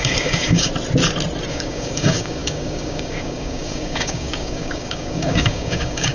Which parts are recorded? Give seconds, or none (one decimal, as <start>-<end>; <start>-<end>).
0.7-1.5

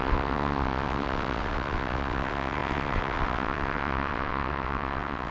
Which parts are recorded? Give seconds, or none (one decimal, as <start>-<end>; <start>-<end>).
none

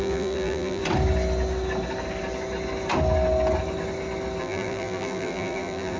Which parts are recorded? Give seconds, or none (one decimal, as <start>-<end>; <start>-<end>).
0.8-4.4

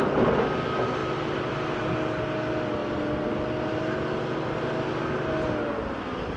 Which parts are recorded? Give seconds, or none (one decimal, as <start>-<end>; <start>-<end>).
0.0-6.4

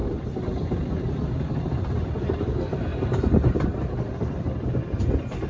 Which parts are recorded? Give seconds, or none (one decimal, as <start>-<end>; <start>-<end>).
2.9-3.5